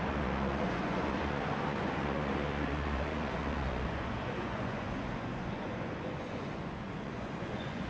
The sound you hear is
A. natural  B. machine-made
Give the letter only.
B